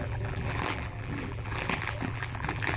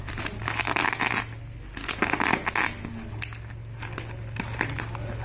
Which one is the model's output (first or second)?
first